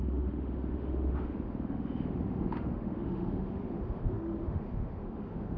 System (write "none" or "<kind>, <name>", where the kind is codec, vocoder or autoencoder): autoencoder, DAC-VAE